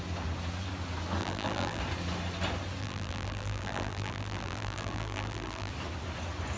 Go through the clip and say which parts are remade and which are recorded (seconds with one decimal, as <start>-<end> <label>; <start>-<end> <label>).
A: 0.0-1.2 recorded; 1.2-1.8 remade; 1.8-2.8 recorded; 2.8-5.7 remade; 5.7-6.6 recorded